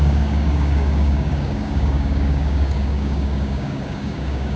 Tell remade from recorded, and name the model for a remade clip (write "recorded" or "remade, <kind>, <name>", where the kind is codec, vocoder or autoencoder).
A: remade, codec, DAC